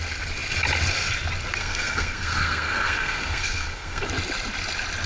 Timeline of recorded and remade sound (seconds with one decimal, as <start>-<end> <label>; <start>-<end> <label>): 0.0-1.6 recorded; 1.6-4.1 remade; 4.1-5.1 recorded